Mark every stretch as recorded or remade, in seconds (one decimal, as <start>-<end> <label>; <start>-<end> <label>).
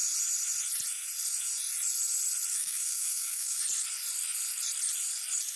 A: 0.0-2.5 recorded; 2.5-3.6 remade; 3.6-5.6 recorded